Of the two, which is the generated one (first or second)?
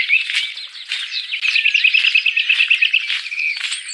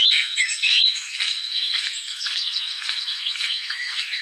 second